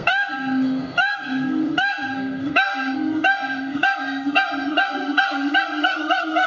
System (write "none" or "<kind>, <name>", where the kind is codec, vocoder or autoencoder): codec, SNAC